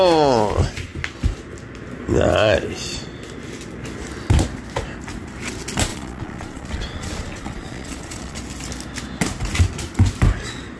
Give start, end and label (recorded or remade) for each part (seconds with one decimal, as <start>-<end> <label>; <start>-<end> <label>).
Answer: 0.0-5.9 recorded; 5.9-8.4 remade; 8.4-10.8 recorded